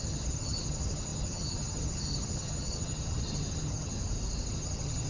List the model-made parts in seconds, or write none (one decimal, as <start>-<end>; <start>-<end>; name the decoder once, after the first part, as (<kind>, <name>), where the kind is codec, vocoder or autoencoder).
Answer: 0.0-4.0 (vocoder, HiFi-GAN); 4.5-5.1